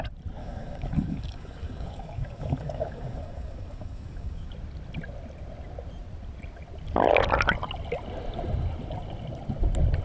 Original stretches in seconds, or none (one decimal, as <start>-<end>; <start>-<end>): 0.0-0.4; 4.5-10.0